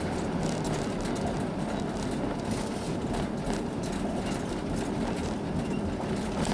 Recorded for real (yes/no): yes